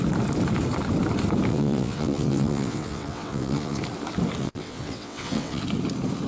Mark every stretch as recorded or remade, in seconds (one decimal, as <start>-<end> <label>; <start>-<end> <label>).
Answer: 0.0-1.5 recorded; 1.5-3.8 remade; 3.8-4.4 recorded; 4.4-5.6 remade; 5.6-6.3 recorded